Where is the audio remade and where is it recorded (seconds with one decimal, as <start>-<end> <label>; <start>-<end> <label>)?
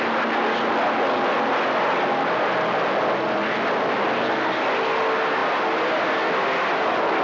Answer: 0.0-7.2 recorded